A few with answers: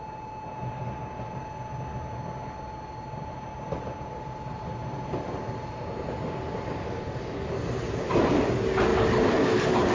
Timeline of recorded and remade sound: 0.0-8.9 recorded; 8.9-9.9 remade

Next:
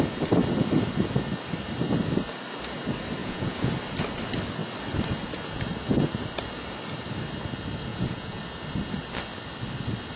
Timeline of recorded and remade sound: 0.0-3.2 recorded; 3.2-3.7 remade; 3.7-7.9 recorded; 7.9-8.4 remade; 8.4-10.2 recorded

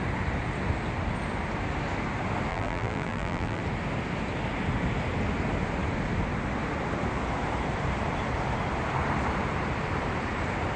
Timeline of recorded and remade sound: 0.0-2.5 recorded; 2.5-3.6 remade; 3.6-10.8 recorded